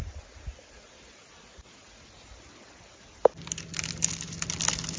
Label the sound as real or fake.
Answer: real